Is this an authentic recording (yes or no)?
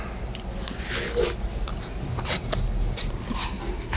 yes